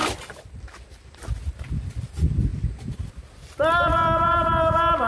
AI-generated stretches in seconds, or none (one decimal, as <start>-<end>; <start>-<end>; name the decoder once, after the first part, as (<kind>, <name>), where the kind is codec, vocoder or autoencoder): none